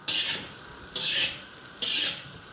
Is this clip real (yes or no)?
no